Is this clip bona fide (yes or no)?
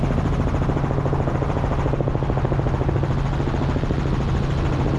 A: yes